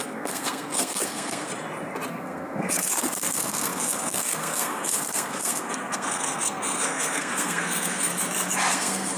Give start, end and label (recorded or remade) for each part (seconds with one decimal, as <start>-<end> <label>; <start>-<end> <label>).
0.0-1.5 remade; 1.5-2.1 recorded; 2.1-8.1 remade; 8.1-8.7 recorded; 8.7-9.2 remade